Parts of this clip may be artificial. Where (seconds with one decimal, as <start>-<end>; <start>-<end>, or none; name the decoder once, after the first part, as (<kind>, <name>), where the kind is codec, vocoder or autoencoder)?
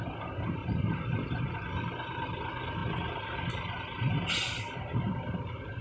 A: 0.6-1.4 (vocoder, BigVGAN v2)